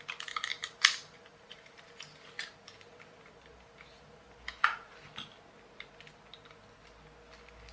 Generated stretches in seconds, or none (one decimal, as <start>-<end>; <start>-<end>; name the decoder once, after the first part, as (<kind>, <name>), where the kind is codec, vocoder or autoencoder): 0.5-4.6 (vocoder, BigVGAN v2)